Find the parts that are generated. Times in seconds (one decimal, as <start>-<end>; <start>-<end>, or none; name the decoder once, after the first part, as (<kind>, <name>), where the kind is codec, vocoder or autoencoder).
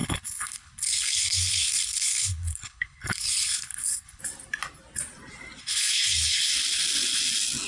0.0-4.2 (codec, HILCodec); 5.6-6.5